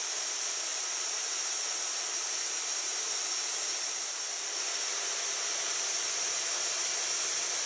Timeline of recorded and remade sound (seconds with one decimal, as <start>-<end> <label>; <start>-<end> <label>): 0.0-7.7 recorded